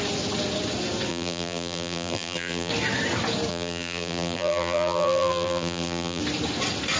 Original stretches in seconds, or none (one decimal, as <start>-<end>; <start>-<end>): 0.0-1.1; 2.7-3.5; 6.2-7.0